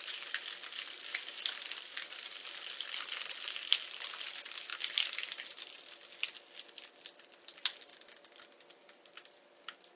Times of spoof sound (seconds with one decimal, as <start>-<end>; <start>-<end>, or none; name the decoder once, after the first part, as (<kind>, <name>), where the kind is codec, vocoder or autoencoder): none

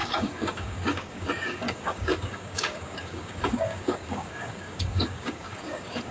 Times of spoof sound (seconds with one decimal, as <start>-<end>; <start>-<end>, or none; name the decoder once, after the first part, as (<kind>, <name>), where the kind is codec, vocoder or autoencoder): 0.0-6.1 (codec, DAC)

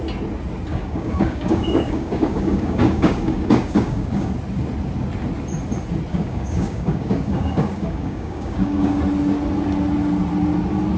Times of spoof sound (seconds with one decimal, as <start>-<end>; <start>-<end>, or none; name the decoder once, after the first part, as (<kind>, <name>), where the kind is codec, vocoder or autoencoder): 0.7-4.3 (codec, DAC); 6.1-9.0

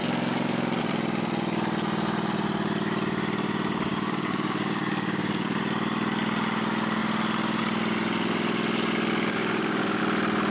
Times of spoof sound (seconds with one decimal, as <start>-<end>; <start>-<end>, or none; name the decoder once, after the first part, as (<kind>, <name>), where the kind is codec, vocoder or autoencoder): 3.9-5.6 (codec, DAC); 9.3-10.0

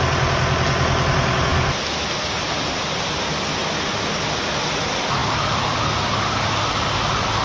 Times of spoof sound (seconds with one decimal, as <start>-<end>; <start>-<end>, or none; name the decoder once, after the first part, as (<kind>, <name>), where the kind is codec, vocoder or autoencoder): none

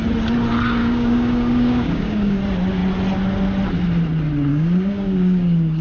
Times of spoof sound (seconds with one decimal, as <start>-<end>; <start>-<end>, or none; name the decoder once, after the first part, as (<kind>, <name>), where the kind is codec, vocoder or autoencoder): 0.8-2.4 (codec, DAC); 4.5-5.8

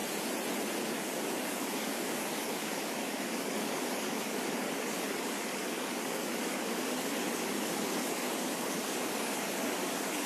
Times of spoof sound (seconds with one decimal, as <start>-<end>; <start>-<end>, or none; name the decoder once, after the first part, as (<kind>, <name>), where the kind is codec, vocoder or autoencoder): 0.8-10.3 (codec, DAC)

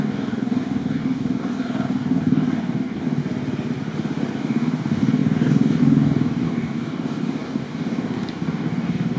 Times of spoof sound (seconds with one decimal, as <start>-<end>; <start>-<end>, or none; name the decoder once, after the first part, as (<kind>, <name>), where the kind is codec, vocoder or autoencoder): 0.0-3.2 (codec, DAC); 4.4-9.2